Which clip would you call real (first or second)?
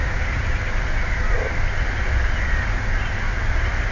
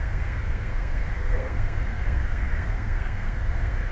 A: first